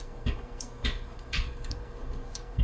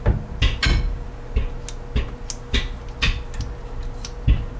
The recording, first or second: second